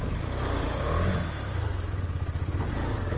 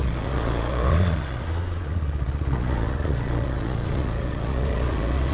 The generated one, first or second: second